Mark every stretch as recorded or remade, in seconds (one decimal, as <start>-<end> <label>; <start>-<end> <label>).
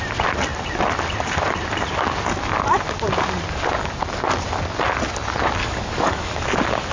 0.0-5.6 recorded; 5.6-6.5 remade; 6.5-6.9 recorded